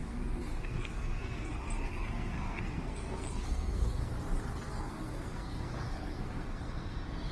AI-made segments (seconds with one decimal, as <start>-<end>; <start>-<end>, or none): 0.0-4.1; 4.7-7.3